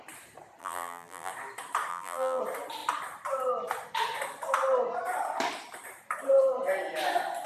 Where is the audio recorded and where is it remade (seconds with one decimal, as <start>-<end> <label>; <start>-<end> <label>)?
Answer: 0.0-0.6 recorded; 0.6-1.3 remade; 1.3-1.9 recorded; 1.9-2.4 remade; 2.4-7.5 recorded